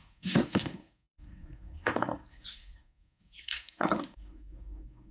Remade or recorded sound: remade